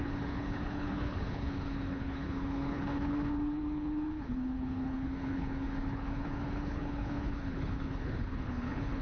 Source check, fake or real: fake